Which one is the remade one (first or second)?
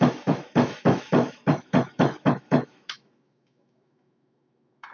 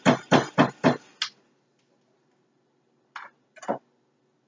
first